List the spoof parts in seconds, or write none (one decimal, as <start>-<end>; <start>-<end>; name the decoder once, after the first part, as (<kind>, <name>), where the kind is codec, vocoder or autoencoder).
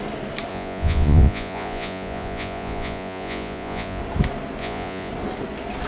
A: 0.5-4.0 (vocoder, Vocos); 4.6-5.1